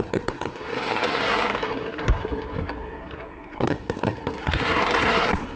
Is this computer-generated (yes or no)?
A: yes